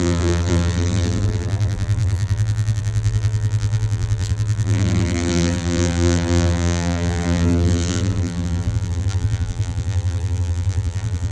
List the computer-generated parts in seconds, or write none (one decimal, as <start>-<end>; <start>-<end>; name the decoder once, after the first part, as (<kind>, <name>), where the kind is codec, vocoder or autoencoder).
0.0-11.3 (vocoder, BigVGAN v2)